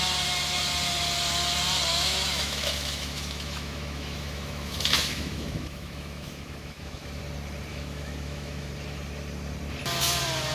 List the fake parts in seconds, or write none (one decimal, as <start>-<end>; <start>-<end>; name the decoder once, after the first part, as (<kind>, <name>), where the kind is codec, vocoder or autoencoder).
1.9-7.2 (autoencoder, DAC-VAE); 7.7-8.7